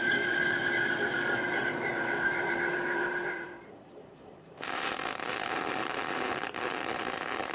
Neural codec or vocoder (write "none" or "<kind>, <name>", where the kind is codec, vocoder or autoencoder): vocoder, BigVGAN v2